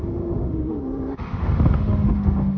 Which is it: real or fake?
fake